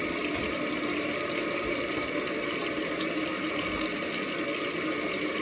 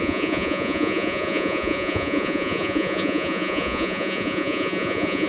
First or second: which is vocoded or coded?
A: second